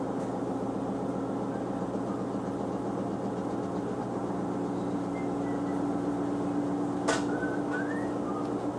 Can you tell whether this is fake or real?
real